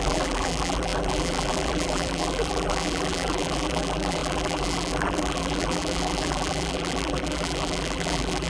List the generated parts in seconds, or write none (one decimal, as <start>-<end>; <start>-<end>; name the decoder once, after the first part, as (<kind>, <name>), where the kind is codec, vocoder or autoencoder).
0.0-8.5 (vocoder, BigVGAN v2)